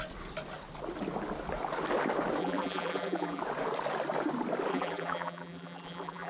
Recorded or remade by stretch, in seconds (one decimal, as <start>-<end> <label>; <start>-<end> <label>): 0.0-2.4 recorded; 2.4-3.4 remade; 3.4-4.7 recorded; 4.7-6.3 remade